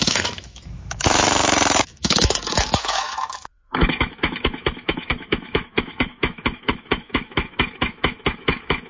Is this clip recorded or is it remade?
remade